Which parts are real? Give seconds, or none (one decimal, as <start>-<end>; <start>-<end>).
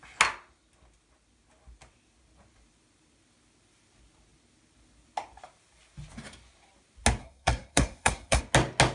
0.0-7.2; 8.4-8.9